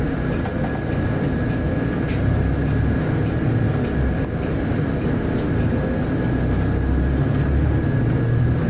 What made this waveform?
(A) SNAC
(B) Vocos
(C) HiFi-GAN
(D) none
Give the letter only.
D